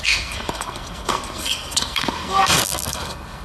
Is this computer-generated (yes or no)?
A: yes